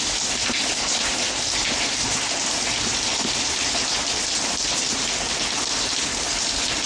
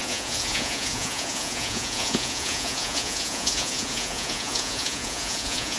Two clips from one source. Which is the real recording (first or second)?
first